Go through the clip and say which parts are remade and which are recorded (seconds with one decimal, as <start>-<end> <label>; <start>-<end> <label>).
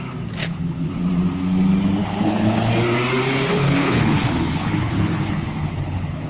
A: 0.0-0.4 recorded; 0.4-1.0 remade; 1.0-2.0 recorded; 2.0-2.7 remade; 2.7-3.5 recorded; 3.5-6.3 remade